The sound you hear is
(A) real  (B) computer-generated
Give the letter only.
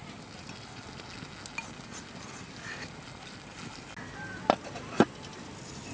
A